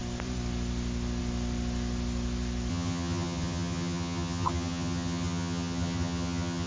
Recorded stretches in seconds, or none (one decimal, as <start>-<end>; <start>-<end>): 0.0-2.7